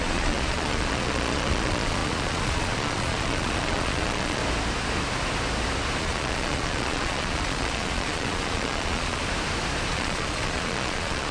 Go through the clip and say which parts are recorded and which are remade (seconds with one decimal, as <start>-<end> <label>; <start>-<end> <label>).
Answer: 0.0-4.4 remade; 4.4-6.0 recorded; 6.0-9.2 remade; 9.2-9.9 recorded; 9.9-11.3 remade